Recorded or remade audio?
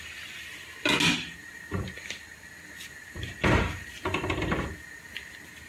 recorded